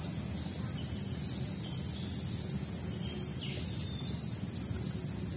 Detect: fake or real real